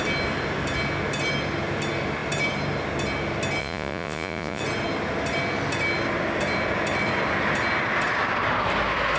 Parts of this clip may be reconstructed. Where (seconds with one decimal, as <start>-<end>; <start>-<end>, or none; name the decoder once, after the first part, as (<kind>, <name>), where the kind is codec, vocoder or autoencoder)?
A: 3.6-4.6 (vocoder, Vocos)